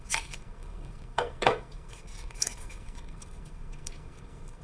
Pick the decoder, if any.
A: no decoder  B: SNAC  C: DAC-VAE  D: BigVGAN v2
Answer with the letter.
B